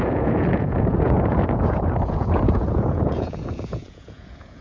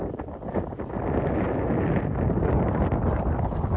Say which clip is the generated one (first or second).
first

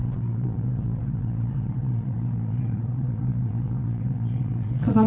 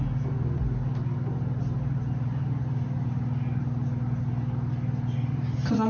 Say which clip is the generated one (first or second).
first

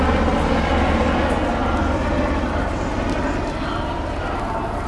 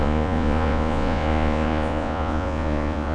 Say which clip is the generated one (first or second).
second